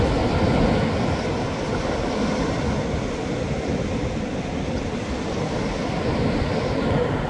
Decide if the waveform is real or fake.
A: real